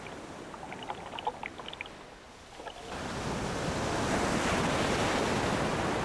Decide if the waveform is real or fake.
real